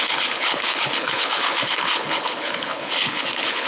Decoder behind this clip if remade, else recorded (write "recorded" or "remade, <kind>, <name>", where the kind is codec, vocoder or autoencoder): remade, codec, HILCodec